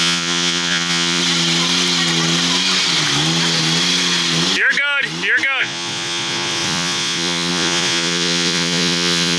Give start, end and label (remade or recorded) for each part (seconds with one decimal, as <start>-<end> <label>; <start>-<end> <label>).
0.0-1.2 remade; 1.2-5.6 recorded; 5.6-9.4 remade